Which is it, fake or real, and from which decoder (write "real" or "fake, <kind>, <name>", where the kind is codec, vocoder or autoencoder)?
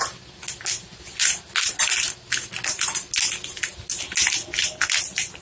real